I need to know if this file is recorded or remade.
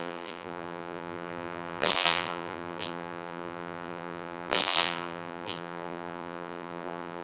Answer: remade